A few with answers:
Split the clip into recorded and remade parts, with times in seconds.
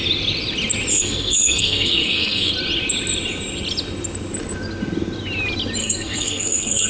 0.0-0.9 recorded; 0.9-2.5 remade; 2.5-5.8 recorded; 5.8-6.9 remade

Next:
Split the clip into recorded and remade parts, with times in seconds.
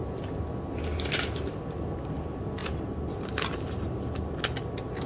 0.0-5.1 recorded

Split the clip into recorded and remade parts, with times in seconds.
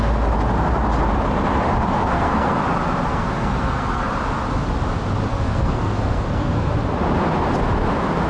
0.0-2.0 recorded; 2.0-2.6 remade; 2.6-3.1 recorded; 3.1-4.1 remade; 4.1-5.3 recorded; 5.3-6.7 remade; 6.7-8.3 recorded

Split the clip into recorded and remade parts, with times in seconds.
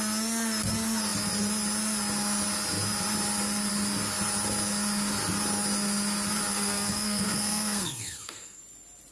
0.0-6.5 recorded; 6.5-8.6 remade; 8.6-9.1 recorded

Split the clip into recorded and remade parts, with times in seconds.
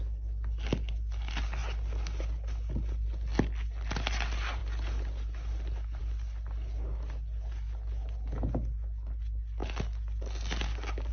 0.0-11.1 recorded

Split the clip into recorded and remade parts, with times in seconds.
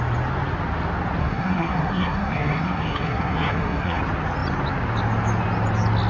0.0-1.2 recorded; 1.2-4.0 remade; 4.0-6.1 recorded